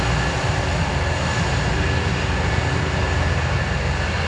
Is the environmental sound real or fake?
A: real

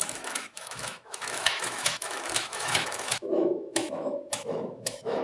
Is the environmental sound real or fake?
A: fake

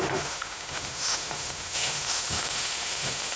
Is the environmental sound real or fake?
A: fake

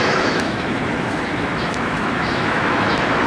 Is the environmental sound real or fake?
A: fake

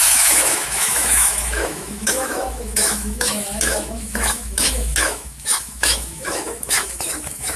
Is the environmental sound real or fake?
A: fake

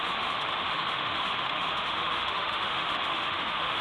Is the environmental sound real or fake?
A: fake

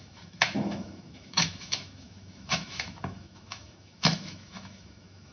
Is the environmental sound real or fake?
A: fake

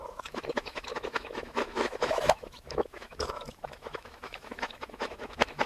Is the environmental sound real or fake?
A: fake